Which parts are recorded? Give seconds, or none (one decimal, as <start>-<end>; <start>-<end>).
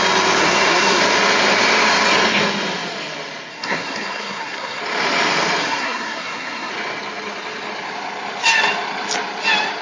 0.0-0.4; 1.0-3.5; 4.8-5.6; 6.7-9.8